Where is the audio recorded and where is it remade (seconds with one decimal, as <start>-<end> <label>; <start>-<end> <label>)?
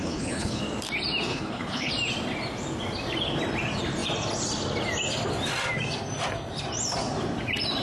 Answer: 0.0-0.6 remade; 0.6-1.3 recorded; 1.3-1.9 remade; 1.9-7.8 recorded